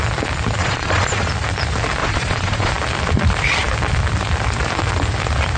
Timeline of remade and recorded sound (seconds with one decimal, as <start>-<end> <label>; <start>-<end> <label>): 0.0-0.6 recorded; 0.6-1.3 remade; 1.3-2.0 recorded; 2.0-2.7 remade; 2.7-5.6 recorded